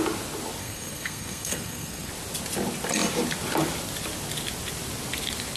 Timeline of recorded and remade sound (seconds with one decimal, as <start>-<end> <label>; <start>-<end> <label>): 0.0-0.6 recorded; 0.6-2.1 remade; 2.1-5.6 recorded

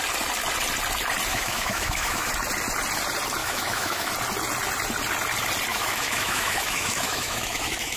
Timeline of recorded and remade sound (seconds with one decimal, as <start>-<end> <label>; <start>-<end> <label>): 0.0-1.3 recorded; 1.3-2.3 remade; 2.3-3.4 recorded; 3.4-4.1 remade; 4.1-5.7 recorded; 5.7-8.0 remade